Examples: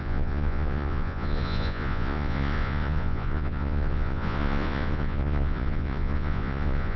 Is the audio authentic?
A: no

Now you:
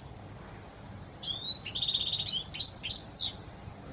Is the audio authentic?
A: yes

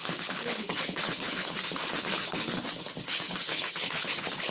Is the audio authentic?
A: no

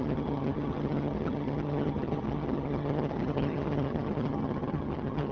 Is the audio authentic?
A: no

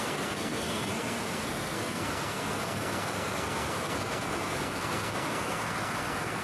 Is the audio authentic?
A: no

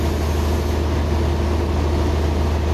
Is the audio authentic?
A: yes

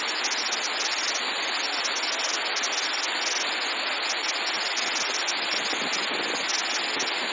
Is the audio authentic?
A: yes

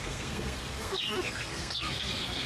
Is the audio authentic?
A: no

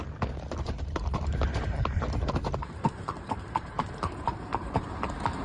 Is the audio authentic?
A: no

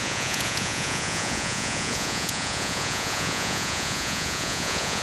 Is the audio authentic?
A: no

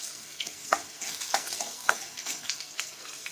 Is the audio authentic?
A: no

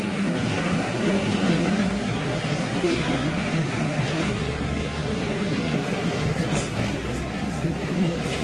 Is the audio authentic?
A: no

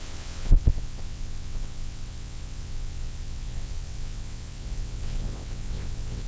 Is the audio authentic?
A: no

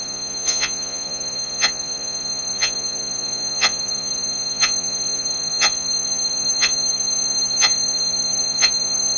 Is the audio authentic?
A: no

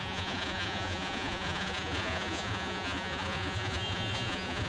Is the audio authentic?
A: no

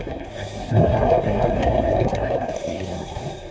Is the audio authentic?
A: no